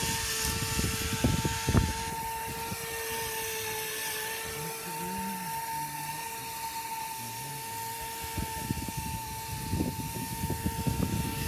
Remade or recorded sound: recorded